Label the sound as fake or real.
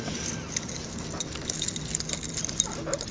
real